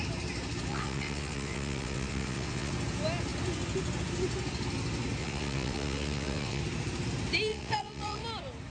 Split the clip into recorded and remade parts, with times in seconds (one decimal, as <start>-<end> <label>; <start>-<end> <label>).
0.0-0.7 recorded; 0.7-2.7 remade; 2.7-5.2 recorded; 5.2-6.6 remade; 6.6-7.5 recorded; 7.5-8.2 remade; 8.2-8.7 recorded